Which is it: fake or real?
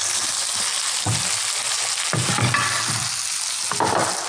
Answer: real